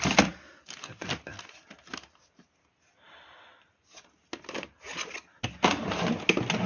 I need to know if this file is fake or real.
real